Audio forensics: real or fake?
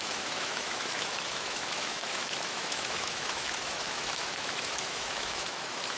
fake